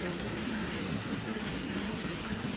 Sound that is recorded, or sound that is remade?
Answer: remade